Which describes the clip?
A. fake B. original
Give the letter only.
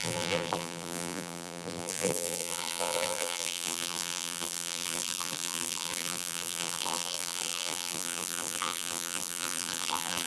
A